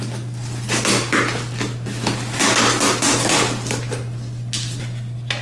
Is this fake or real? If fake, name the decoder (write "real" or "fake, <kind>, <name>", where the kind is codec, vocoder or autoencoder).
real